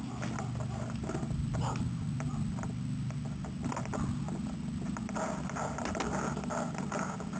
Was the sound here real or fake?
real